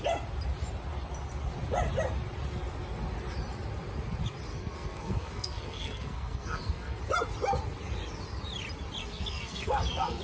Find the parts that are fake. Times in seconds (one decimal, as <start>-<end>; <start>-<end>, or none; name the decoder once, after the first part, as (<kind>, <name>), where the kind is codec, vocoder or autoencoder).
4.5-7.0 (codec, SNAC); 9.0-10.2